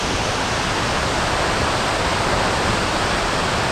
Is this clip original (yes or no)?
yes